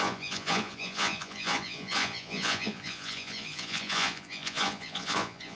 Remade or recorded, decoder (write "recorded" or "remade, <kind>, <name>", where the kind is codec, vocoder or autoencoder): remade, vocoder, Vocos